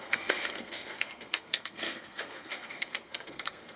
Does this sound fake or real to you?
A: fake